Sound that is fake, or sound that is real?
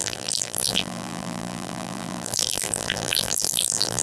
fake